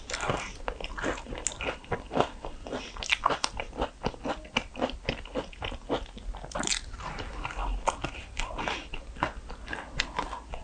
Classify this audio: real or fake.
real